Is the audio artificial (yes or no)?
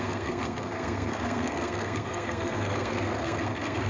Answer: yes